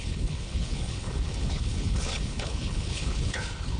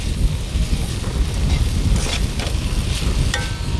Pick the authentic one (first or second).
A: second